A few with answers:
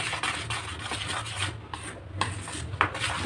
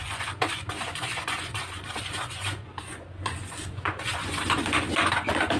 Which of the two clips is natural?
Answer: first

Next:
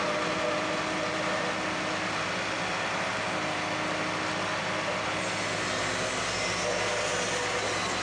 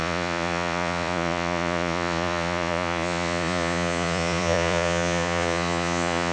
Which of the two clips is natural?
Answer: first